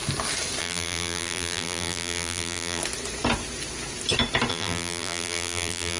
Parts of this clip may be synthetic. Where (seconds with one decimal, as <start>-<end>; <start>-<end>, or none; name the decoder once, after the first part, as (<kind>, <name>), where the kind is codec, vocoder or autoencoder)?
0.6-2.8 (vocoder, BigVGAN v2); 4.5-6.0